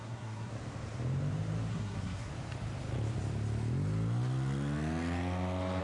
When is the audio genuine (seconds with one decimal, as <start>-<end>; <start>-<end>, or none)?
0.5-1.7; 2.3-5.8